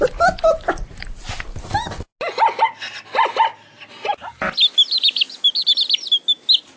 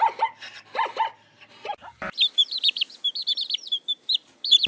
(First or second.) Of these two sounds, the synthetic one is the second